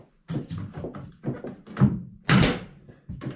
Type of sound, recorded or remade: recorded